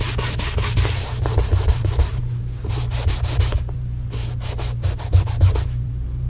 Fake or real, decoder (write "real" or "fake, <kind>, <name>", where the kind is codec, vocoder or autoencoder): fake, vocoder, BigVGAN v2